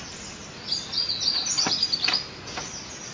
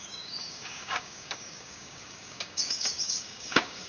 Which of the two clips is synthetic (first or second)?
second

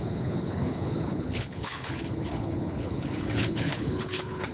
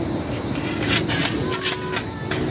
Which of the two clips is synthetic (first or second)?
first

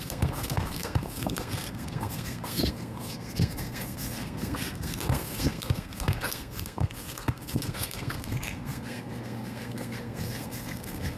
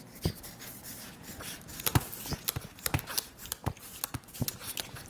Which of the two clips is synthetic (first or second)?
first